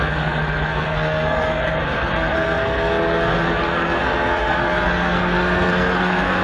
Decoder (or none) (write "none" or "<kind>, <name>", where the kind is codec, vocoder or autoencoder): codec, SNAC